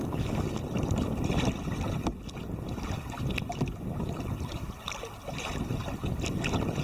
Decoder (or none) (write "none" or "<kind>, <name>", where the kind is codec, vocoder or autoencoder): none